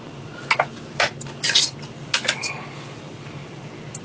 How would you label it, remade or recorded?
recorded